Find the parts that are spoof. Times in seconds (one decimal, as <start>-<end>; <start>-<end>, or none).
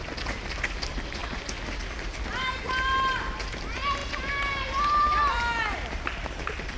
none